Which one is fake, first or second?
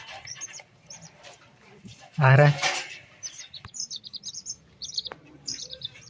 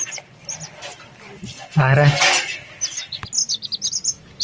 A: first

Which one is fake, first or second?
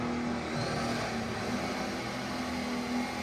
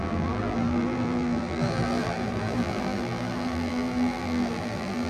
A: second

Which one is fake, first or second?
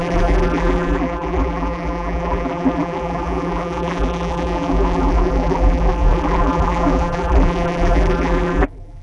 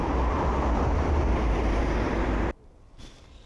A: first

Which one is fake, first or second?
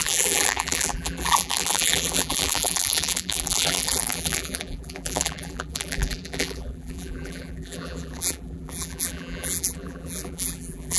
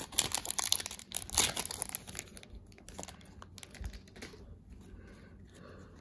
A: first